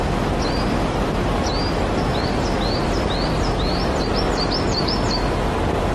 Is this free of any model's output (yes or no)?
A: yes